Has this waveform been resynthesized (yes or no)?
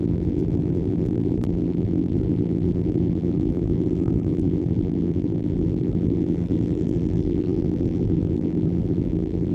yes